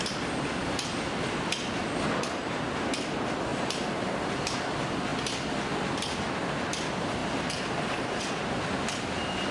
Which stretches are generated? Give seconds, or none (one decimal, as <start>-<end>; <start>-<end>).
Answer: 3.5-4.3; 7.2-8.2